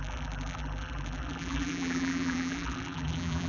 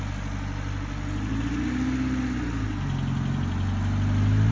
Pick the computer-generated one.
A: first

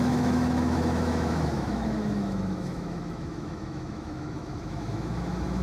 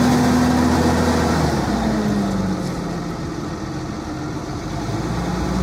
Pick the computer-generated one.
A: first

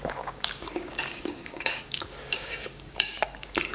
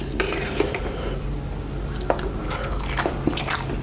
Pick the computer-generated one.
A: first